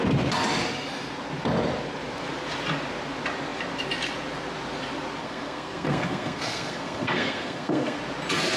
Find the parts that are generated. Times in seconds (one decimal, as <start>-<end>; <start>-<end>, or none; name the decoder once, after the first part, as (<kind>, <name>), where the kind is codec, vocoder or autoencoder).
5.2-8.0 (codec, SNAC)